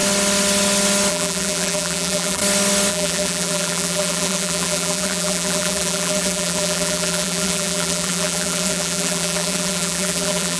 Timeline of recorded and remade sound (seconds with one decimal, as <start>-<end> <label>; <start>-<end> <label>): 0.0-1.1 recorded; 1.1-2.4 remade; 2.4-2.9 recorded; 2.9-10.6 remade